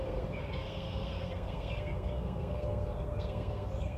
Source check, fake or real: fake